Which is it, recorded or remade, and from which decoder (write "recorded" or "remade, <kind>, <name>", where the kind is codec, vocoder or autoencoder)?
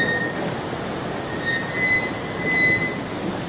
recorded